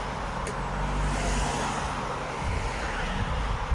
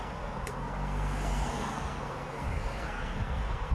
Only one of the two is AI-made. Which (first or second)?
second